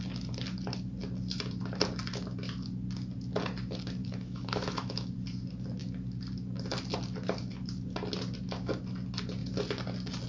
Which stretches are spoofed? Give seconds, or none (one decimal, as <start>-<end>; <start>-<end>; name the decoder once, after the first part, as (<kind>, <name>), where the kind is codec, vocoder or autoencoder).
4.0-5.1 (autoencoder, DAC-VAE)